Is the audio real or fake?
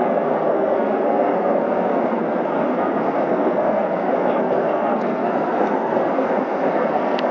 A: fake